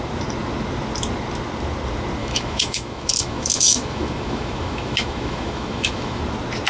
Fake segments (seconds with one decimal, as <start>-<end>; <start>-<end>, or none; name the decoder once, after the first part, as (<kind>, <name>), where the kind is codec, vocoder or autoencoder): 2.2-6.2 (autoencoder, DAC-VAE)